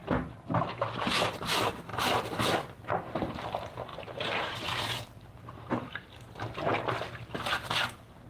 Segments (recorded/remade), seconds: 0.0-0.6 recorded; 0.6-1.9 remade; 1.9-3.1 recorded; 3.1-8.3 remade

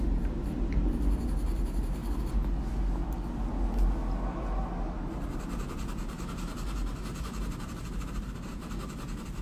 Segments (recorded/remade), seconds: 0.0-2.0 remade; 2.0-6.3 recorded; 6.3-9.4 remade

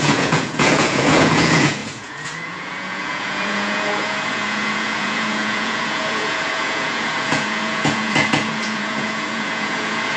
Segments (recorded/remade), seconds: 0.0-10.2 remade

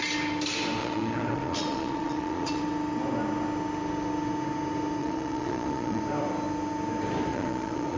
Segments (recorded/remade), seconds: 0.0-0.8 recorded; 0.8-2.6 remade; 2.6-5.0 recorded; 5.0-6.0 remade; 6.0-7.3 recorded; 7.3-8.0 remade

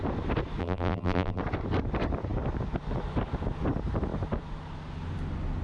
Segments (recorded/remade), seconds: 0.0-0.6 recorded; 0.6-1.4 remade; 1.4-5.6 recorded